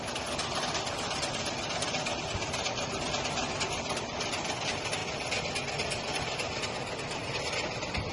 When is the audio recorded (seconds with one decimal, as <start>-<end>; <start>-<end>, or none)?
0.0-8.1